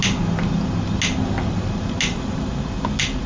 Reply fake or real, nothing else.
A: real